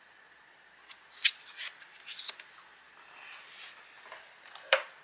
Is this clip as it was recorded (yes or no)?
yes